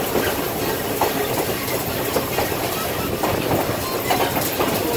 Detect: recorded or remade remade